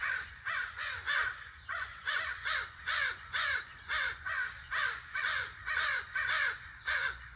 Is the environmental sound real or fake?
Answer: fake